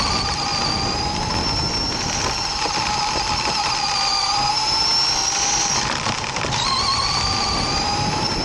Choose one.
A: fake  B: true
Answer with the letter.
B